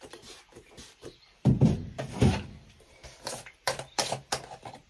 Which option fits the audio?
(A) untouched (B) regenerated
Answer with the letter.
B